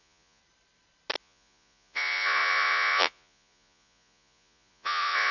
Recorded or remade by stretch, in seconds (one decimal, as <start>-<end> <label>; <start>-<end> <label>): 0.0-0.4 remade; 0.4-1.2 recorded; 1.2-5.3 remade